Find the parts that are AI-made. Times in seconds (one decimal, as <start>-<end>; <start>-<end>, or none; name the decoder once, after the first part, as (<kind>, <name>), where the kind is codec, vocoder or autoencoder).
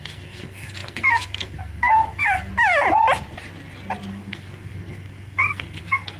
0.0-2.5 (codec, SNAC); 4.1-6.2